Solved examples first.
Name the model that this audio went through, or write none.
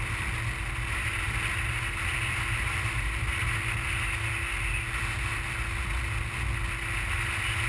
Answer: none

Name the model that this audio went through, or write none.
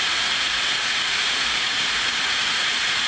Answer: vocoder, Vocos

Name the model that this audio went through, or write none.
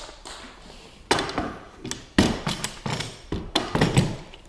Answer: none